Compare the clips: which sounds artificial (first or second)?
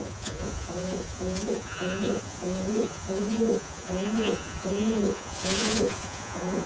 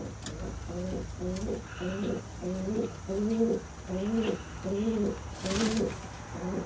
first